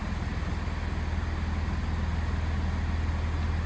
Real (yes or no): yes